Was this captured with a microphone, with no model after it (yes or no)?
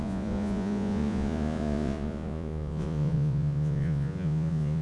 no